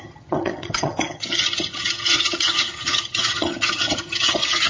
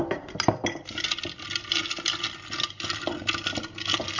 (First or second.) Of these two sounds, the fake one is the first